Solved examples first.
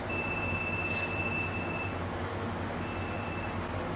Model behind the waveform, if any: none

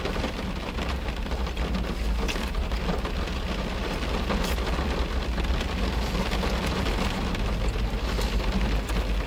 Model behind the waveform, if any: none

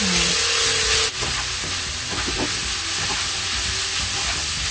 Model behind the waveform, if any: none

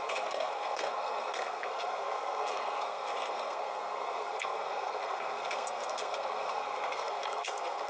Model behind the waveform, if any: codec, SNAC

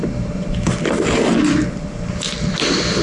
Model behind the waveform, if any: none